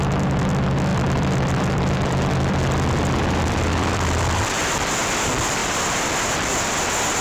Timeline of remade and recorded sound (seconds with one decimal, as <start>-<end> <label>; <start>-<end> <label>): 0.0-0.9 recorded; 0.9-4.4 remade; 4.4-5.6 recorded; 5.6-6.6 remade; 6.6-7.2 recorded